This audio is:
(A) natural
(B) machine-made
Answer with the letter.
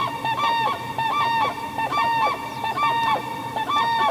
A